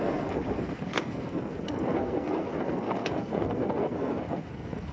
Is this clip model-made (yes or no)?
yes